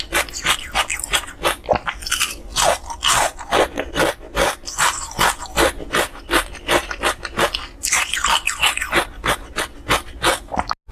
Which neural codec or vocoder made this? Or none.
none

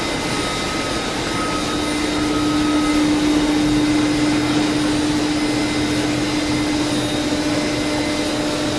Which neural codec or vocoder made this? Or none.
none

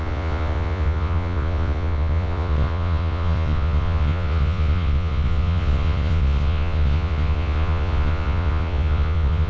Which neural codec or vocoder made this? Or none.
vocoder, Vocos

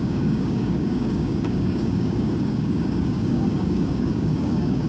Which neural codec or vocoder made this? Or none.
codec, DAC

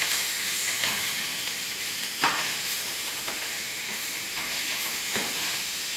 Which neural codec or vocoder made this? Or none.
autoencoder, DAC-VAE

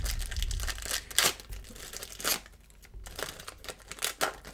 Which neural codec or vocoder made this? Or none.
none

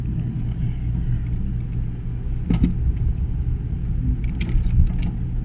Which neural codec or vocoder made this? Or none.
none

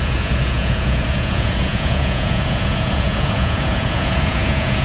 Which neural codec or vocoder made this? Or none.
vocoder, Vocos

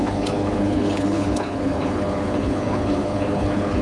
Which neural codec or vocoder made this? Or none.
codec, HILCodec